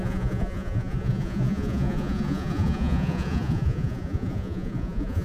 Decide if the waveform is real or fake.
fake